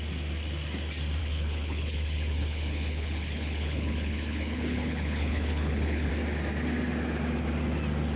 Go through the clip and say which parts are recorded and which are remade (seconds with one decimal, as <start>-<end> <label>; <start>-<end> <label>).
0.0-1.2 recorded; 1.2-6.1 remade; 6.1-8.2 recorded